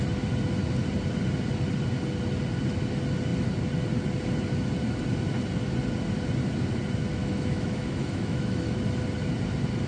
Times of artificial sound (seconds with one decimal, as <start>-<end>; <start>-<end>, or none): 7.2-8.8